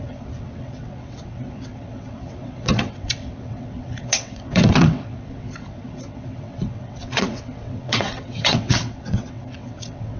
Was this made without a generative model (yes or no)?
no